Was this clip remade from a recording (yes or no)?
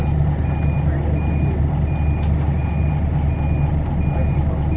no